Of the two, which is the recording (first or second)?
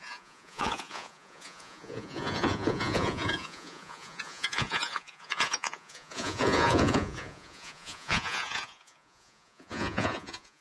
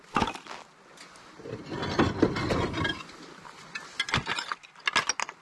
second